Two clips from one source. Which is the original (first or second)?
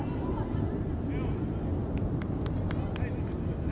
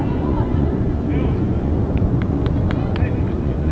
first